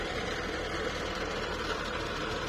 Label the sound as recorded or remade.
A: recorded